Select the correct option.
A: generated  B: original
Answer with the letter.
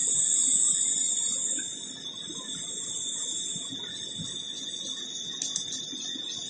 B